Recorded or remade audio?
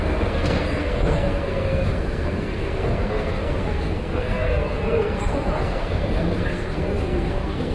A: remade